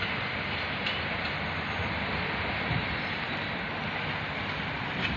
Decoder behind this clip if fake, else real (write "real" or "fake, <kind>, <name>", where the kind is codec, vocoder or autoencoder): real